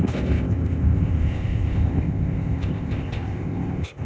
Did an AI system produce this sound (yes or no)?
yes